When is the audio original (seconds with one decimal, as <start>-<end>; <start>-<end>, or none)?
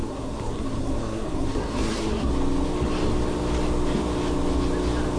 2.3-5.2